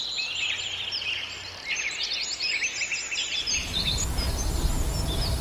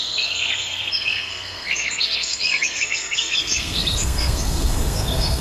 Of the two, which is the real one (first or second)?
first